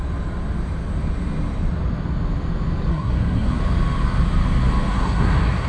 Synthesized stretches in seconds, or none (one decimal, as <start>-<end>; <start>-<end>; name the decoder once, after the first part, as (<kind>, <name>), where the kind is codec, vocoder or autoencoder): 2.9-3.6 (codec, SNAC); 4.9-5.7